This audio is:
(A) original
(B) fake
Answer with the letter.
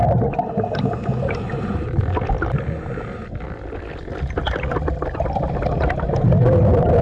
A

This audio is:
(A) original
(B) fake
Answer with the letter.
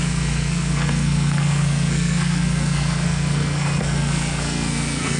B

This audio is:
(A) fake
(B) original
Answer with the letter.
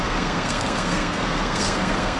A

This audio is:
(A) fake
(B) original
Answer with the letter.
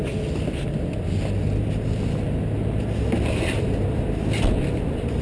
B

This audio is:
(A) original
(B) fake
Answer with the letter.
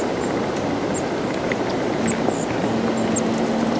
A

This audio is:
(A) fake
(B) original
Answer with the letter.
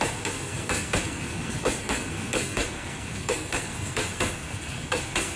A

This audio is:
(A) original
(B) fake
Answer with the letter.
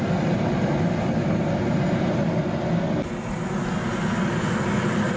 A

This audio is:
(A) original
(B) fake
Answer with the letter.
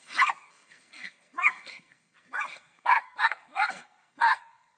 B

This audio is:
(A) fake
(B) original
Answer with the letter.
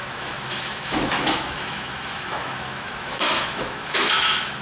A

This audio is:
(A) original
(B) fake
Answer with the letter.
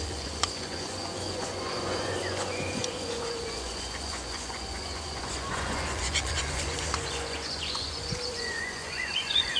B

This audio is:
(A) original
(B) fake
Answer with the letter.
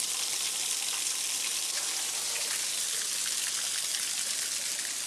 A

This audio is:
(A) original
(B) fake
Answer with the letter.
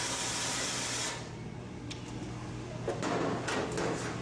A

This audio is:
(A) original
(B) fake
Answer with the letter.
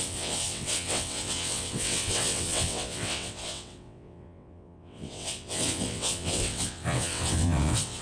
B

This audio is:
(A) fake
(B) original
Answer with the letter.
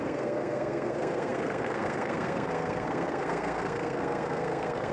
A